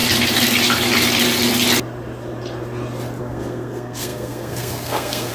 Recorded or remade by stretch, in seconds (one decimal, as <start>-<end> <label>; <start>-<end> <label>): 0.0-3.2 recorded; 3.2-5.3 remade